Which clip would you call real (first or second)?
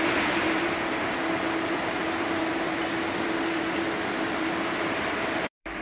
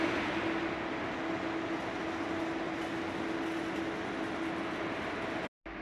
second